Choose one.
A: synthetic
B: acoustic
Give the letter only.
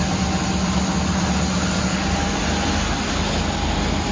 B